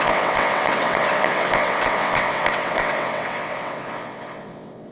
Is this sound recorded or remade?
remade